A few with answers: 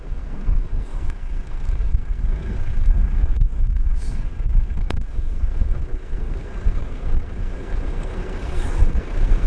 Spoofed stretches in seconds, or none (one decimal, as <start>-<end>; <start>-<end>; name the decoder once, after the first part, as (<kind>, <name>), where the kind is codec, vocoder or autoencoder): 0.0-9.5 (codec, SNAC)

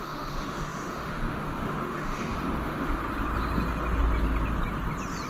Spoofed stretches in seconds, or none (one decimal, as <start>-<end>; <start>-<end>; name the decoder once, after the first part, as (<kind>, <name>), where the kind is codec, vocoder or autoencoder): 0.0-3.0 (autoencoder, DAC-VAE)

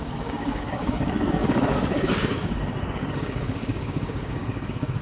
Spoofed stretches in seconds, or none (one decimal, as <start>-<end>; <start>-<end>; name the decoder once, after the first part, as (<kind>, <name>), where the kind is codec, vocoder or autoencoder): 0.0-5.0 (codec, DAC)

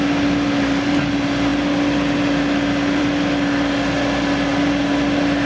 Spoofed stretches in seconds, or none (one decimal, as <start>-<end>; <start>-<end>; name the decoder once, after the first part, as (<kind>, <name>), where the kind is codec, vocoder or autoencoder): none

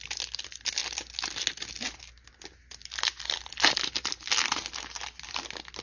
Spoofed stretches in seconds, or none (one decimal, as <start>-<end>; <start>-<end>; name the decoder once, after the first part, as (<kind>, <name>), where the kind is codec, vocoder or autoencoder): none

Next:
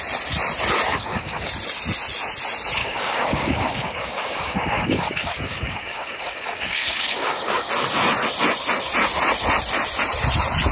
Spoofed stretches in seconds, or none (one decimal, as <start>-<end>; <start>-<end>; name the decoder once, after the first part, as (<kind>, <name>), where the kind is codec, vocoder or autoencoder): 0.9-1.5 (codec, DAC); 2.8-7.7